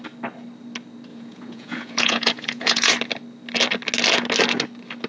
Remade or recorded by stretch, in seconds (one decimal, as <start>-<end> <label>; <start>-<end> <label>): 0.0-1.1 recorded; 1.1-2.9 remade; 2.9-5.1 recorded